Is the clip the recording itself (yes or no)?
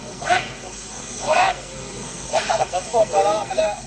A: no